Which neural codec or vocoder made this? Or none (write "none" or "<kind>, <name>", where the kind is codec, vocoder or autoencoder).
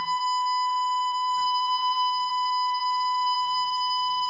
codec, SNAC